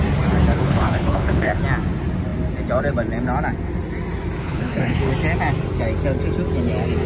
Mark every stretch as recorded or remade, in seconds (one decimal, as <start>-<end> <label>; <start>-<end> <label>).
0.0-0.5 recorded; 0.5-1.6 remade; 1.6-4.4 recorded; 4.4-5.1 remade; 5.1-7.1 recorded